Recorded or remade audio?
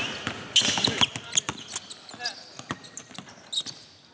recorded